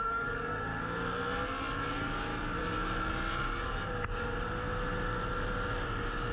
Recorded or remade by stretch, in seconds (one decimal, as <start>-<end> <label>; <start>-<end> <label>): 0.0-0.7 remade; 0.7-1.9 recorded; 1.9-2.3 remade; 2.3-6.3 recorded